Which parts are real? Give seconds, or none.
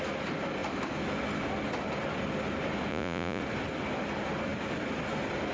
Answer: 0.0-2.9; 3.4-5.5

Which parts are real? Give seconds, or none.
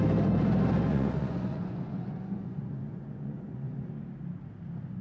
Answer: 0.0-0.9; 3.9-5.0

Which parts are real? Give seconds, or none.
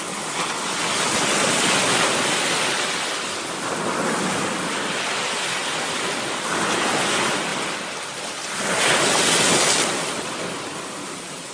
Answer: 0.0-11.5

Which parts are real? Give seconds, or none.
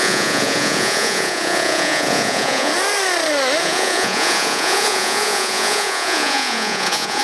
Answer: 2.7-3.6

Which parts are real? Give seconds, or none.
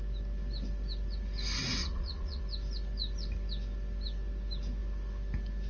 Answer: 0.0-1.8; 2.4-5.7